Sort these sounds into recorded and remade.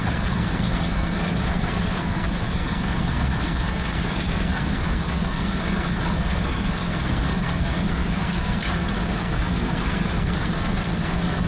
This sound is remade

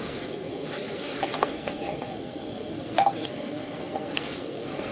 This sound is remade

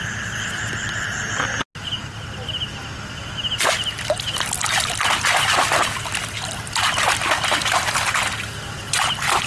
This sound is recorded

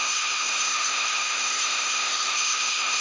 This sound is remade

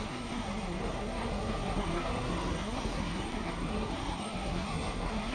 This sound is remade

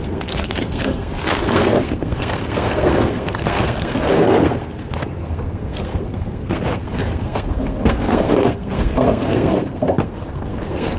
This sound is remade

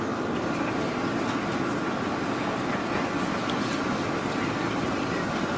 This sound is recorded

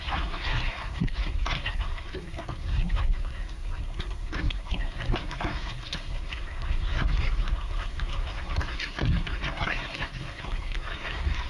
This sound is remade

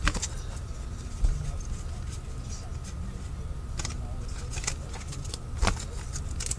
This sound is recorded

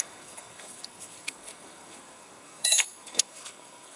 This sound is remade